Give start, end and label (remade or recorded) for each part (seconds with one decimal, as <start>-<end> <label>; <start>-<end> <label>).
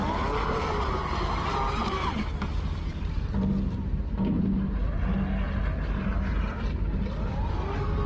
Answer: 0.0-0.4 recorded; 0.4-2.8 remade; 2.8-8.1 recorded